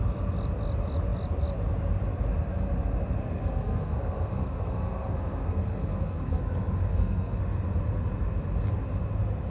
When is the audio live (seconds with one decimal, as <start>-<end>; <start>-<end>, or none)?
0.0-3.2; 6.4-6.9; 7.4-9.5